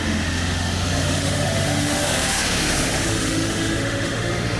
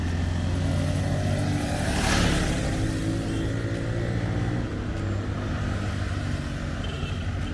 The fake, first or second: first